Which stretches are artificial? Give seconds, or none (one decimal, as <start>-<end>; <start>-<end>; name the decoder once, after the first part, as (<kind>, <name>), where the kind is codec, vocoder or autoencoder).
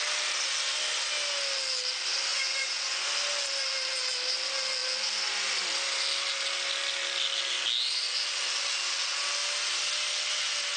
2.3-3.1 (vocoder, Vocos)